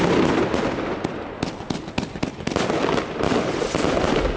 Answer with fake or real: real